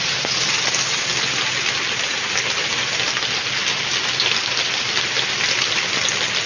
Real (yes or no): yes